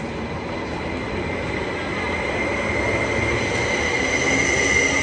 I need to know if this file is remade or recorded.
recorded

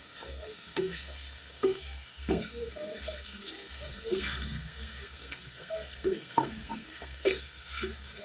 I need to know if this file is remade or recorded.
remade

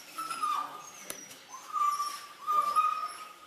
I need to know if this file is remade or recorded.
remade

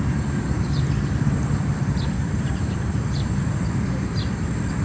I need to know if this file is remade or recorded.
remade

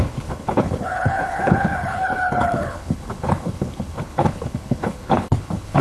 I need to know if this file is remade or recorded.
remade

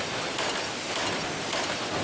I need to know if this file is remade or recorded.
remade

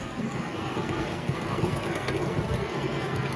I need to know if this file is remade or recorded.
remade